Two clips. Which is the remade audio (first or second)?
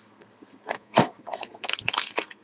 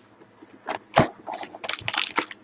first